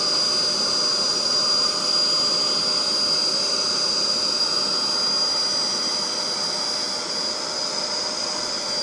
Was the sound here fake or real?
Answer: real